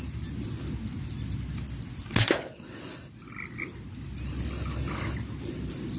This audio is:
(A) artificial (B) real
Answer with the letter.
B